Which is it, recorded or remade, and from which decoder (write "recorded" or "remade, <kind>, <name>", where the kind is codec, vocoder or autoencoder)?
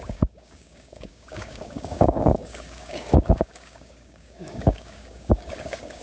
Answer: remade, codec, DAC